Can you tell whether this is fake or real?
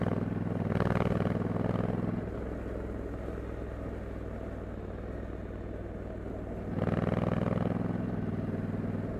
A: real